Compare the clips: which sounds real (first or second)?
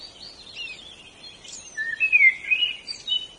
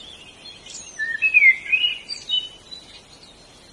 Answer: second